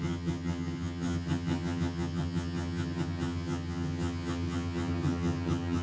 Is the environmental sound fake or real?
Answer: fake